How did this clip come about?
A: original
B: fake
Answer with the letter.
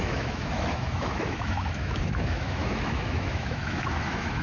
B